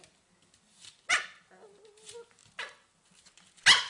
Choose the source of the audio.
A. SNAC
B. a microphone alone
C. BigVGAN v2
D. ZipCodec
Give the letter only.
B